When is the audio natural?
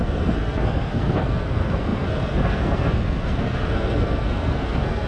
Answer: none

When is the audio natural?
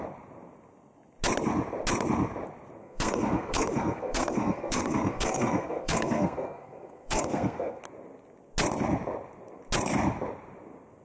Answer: 0.0-2.8; 7.8-11.0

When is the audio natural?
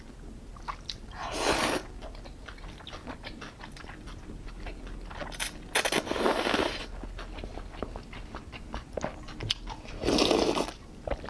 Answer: 0.0-11.3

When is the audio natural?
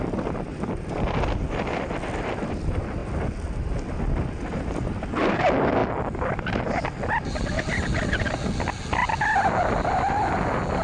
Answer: 0.0-10.8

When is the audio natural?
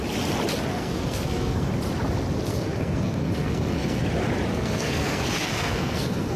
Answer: 0.0-0.7; 1.7-2.5; 4.0-4.5